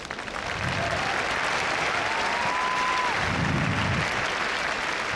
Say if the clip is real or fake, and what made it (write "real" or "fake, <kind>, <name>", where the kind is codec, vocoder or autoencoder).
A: real